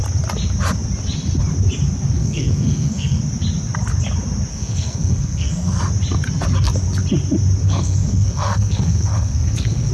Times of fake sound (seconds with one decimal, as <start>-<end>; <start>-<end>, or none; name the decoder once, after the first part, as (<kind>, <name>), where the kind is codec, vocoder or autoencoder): 2.2-3.2 (codec, SNAC); 4.5-5.8; 7.6-9.9